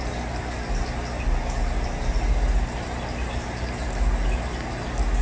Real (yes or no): yes